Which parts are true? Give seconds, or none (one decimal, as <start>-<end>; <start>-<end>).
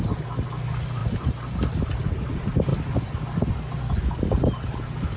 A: 0.0-5.2